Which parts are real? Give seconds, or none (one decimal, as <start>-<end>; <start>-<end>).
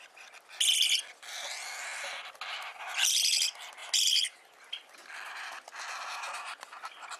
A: 0.0-7.2